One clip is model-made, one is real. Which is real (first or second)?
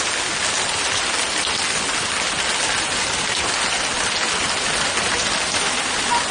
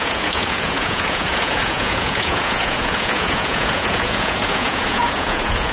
first